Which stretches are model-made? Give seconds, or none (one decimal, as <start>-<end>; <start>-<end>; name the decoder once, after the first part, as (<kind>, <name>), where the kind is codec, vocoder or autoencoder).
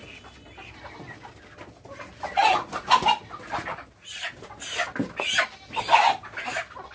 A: none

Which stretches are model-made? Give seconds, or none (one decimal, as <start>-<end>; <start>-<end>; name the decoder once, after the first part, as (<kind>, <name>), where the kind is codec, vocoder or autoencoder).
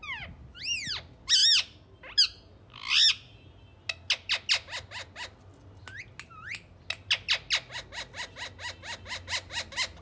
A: none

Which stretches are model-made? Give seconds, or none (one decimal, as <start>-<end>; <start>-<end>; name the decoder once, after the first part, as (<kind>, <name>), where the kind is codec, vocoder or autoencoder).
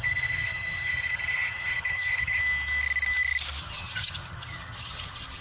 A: 0.0-2.4 (vocoder, HiFi-GAN); 3.6-5.4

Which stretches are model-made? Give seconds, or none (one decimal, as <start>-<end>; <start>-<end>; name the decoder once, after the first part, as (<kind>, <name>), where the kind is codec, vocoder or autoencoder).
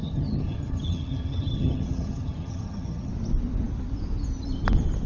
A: 0.0-3.1 (vocoder, HiFi-GAN)